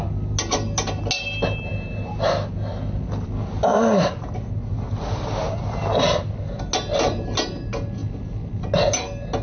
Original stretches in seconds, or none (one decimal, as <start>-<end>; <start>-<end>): 0.0-9.4